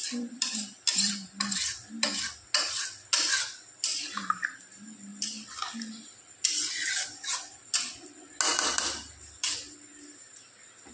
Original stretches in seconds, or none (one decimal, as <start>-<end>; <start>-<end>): 1.1-5.1; 6.2-8.5; 10.4-10.9